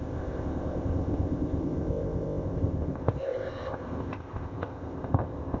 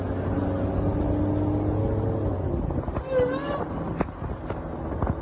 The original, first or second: second